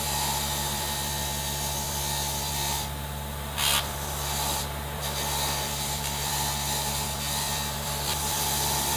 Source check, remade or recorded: remade